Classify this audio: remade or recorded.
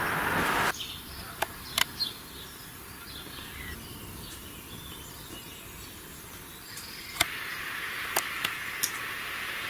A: recorded